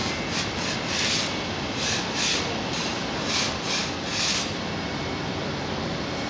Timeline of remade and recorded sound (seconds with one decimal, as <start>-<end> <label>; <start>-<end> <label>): 0.0-0.9 recorded; 0.9-6.3 remade